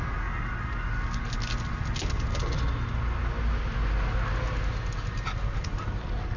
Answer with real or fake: real